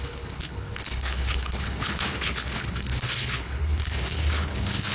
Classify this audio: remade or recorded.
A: remade